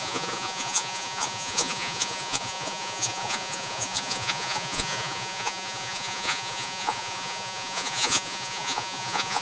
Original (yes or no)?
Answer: no